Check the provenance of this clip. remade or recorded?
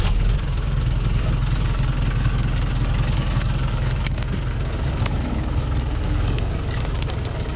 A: remade